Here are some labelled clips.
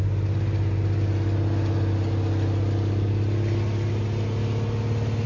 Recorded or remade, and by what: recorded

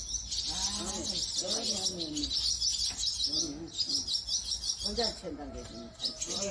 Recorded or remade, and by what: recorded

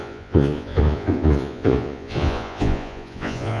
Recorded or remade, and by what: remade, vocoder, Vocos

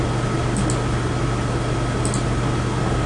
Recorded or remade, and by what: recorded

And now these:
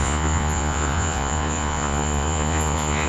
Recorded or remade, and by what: remade, vocoder, Vocos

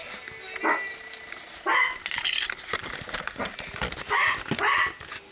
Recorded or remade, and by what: recorded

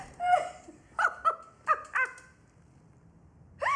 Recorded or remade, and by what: recorded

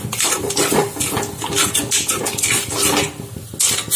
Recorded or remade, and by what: recorded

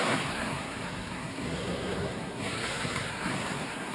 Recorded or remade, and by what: remade, codec, SNAC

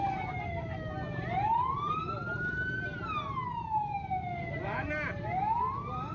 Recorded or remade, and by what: recorded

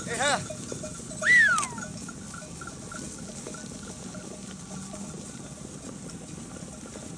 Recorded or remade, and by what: recorded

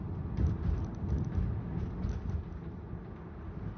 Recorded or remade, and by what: recorded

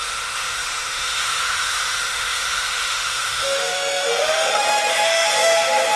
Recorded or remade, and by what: remade, autoencoder, DAC-VAE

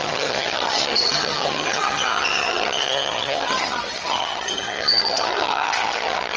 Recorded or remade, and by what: remade, vocoder, HiFi-GAN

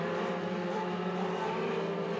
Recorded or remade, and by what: remade, vocoder, BigVGAN v2